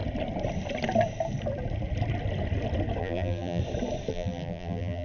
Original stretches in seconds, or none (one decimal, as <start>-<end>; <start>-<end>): 0.0-3.0; 3.6-4.1